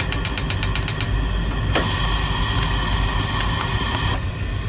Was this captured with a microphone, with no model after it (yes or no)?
yes